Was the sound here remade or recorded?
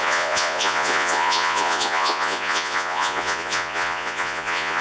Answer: remade